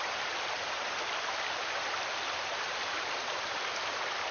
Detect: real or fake real